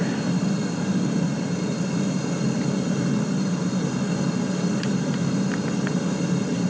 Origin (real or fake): real